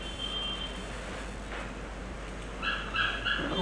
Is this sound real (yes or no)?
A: yes